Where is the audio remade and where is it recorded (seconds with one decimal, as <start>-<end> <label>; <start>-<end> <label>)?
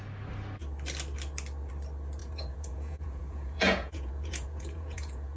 0.0-2.2 recorded; 2.2-5.4 remade